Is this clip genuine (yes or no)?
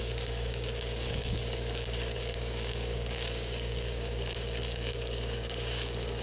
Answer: no